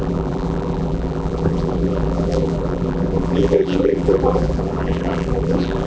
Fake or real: fake